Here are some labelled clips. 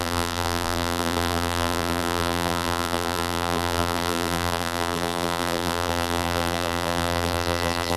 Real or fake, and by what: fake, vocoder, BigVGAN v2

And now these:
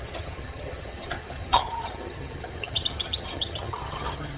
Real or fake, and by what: fake, vocoder, HiFi-GAN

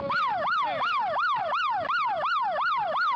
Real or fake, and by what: fake, vocoder, BigVGAN v2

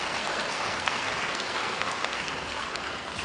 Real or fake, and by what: fake, codec, SNAC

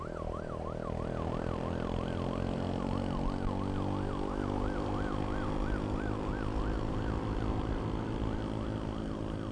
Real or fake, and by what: real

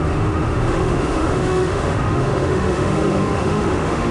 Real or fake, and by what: fake, autoencoder, DAC-VAE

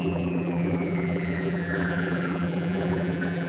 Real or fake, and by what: fake, vocoder, BigVGAN v2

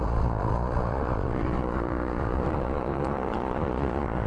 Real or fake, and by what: fake, vocoder, Vocos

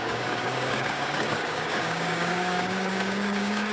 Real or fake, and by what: fake, codec, DAC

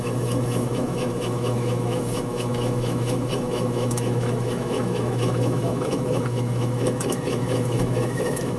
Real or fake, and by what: fake, autoencoder, DAC-VAE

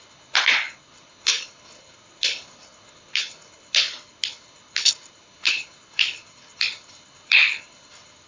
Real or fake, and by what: fake, codec, HILCodec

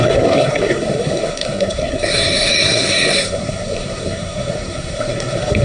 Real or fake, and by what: fake, codec, SNAC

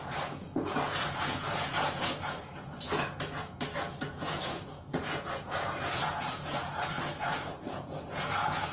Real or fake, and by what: fake, vocoder, Vocos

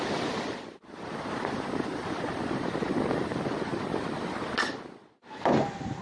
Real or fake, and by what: real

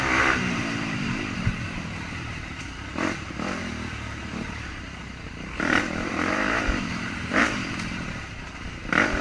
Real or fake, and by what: fake, vocoder, BigVGAN v2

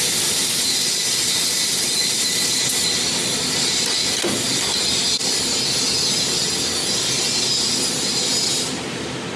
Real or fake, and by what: real